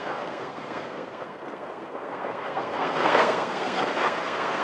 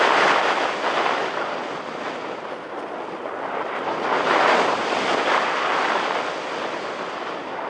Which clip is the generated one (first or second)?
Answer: first